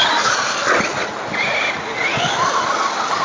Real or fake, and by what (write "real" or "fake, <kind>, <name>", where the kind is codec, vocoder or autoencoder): real